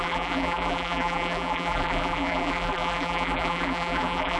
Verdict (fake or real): fake